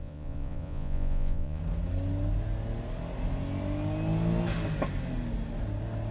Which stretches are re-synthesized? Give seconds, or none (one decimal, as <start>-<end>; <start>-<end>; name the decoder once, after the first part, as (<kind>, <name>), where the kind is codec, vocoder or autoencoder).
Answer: 0.0-1.6 (vocoder, Vocos)